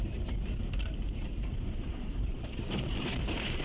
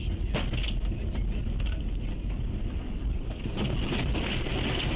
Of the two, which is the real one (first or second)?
second